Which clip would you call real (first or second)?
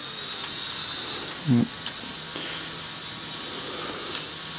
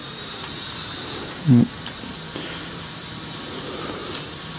first